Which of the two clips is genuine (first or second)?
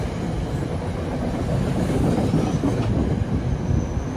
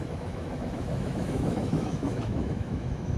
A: first